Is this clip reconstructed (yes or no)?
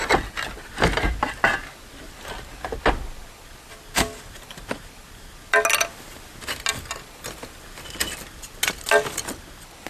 no